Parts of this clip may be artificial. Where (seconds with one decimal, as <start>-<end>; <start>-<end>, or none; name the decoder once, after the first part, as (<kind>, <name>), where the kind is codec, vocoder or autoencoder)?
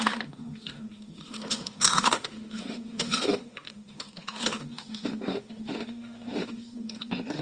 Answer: 0.0-7.4 (autoencoder, DAC-VAE)